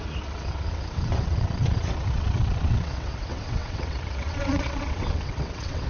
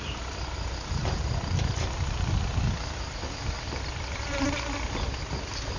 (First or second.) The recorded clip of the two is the second